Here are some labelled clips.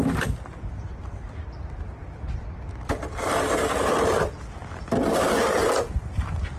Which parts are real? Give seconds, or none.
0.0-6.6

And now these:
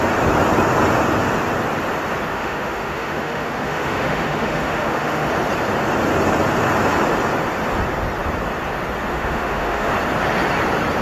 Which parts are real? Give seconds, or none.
0.0-2.3; 5.3-9.1; 9.9-11.0

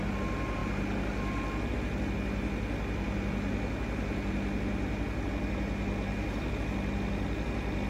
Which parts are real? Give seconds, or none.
0.0-7.9

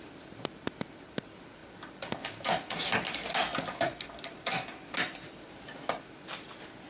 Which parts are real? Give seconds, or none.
0.0-6.9

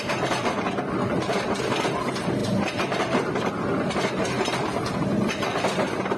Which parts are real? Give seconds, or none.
0.0-6.2

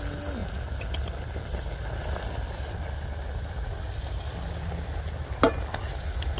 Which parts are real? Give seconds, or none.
0.0-6.4

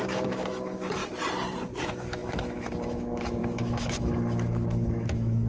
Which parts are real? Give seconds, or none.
1.0-1.8